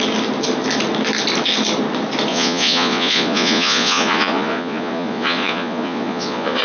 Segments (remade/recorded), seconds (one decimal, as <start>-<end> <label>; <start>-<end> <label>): 0.0-2.3 recorded; 2.3-6.6 remade